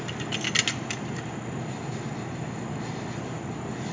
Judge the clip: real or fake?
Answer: real